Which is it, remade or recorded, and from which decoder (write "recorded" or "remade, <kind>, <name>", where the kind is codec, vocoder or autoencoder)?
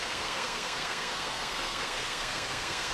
remade, codec, SNAC